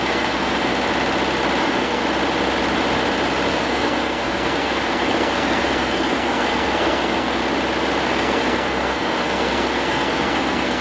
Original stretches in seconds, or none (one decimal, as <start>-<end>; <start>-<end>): 0.7-1.6; 2.0-3.5; 7.4-8.0